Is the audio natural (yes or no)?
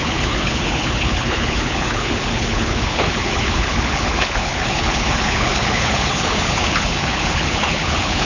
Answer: no